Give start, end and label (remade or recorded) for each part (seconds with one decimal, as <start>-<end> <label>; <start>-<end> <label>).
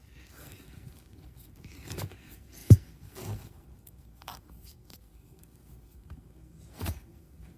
0.0-7.6 remade